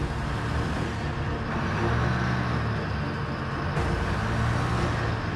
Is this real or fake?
real